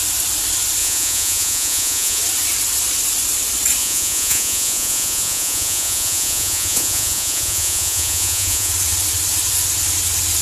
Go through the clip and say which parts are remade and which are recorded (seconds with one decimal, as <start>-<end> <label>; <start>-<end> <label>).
0.0-0.8 recorded; 0.8-2.2 remade; 2.2-3.8 recorded; 3.8-8.7 remade; 8.7-10.4 recorded